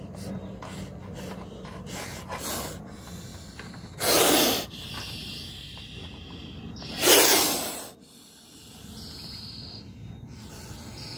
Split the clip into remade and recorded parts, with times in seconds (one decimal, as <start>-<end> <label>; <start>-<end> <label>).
0.0-11.2 recorded